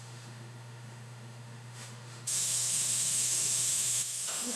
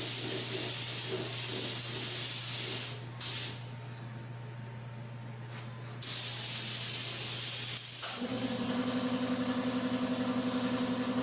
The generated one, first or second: first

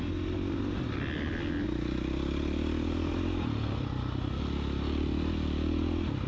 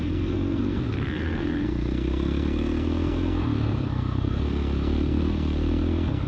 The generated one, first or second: second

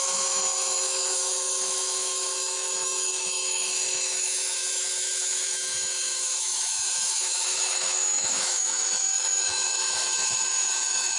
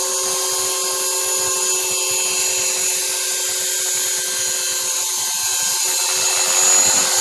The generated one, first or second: first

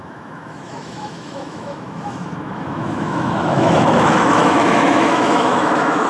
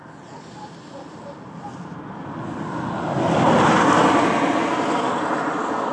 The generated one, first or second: first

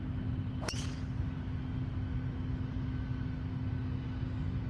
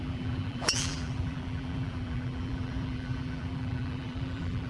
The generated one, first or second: second